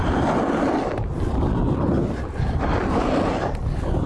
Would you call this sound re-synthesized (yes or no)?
no